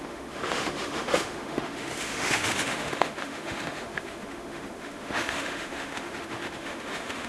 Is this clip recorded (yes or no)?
no